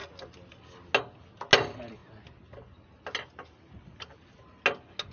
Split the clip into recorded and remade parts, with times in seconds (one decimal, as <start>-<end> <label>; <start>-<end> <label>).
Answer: 0.0-5.1 recorded